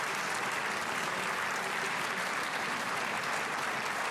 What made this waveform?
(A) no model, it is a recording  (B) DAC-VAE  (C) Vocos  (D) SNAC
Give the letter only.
A